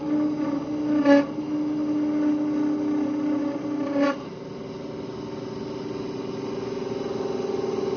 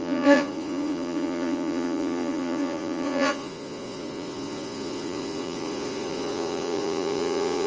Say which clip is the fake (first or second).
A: second